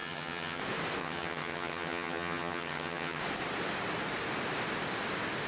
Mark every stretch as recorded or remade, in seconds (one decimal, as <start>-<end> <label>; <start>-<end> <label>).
0.0-0.6 remade; 0.6-1.0 recorded; 1.0-3.2 remade; 3.2-5.5 recorded